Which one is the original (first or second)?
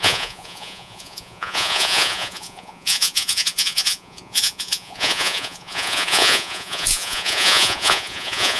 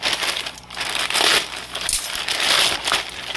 second